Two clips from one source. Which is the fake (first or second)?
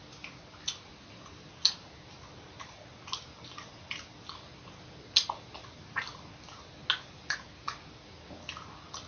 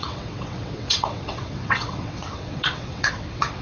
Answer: second